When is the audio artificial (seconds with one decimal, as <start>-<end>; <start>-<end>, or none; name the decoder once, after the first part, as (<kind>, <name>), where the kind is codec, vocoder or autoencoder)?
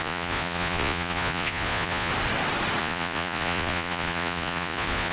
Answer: 0.0-2.1 (vocoder, Vocos); 2.8-5.1